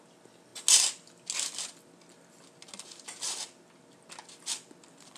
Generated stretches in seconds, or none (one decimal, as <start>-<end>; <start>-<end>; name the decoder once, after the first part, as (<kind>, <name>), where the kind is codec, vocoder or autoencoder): none